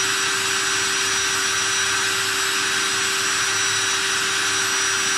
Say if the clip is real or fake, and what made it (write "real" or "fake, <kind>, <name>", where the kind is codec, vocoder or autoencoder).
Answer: real